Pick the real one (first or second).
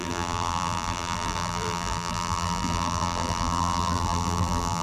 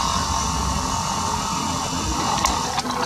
second